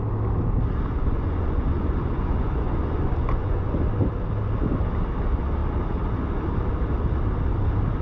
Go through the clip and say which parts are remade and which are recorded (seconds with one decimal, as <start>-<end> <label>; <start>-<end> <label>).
0.0-1.0 recorded; 1.0-3.8 remade; 3.8-8.0 recorded